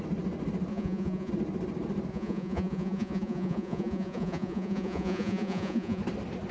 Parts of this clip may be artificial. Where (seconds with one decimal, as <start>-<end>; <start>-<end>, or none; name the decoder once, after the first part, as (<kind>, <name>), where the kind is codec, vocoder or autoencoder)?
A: 0.7-1.3 (vocoder, Vocos); 2.1-6.0